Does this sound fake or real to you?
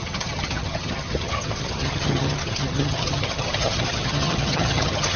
fake